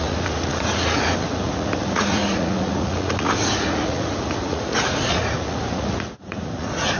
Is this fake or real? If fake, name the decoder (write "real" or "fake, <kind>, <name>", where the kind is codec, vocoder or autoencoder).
fake, vocoder, Vocos